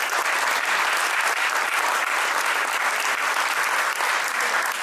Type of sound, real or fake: real